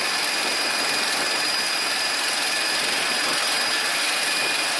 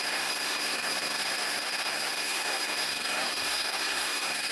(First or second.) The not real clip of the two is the second